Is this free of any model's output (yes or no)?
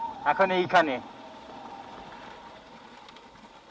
yes